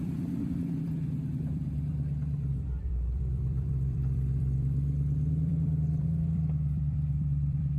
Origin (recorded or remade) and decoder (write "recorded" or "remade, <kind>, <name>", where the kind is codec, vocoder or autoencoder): remade, vocoder, BigVGAN v2